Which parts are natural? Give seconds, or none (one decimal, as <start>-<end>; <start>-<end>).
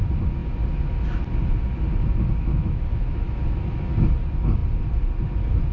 0.0-2.5; 3.4-5.7